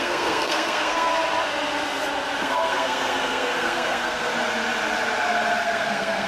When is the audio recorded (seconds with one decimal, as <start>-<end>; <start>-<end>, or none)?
1.1-2.4; 4.3-5.6